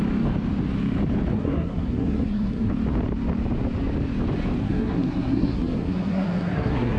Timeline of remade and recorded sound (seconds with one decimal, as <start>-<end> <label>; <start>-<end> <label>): 0.0-1.3 recorded; 1.3-2.7 remade; 2.7-4.6 recorded; 4.6-7.0 remade